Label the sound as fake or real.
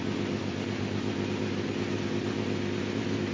real